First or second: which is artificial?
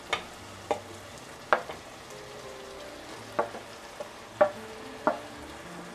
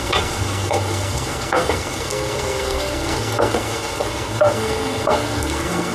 second